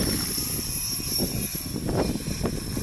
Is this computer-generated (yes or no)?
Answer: no